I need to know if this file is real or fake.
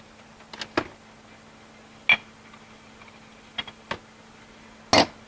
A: real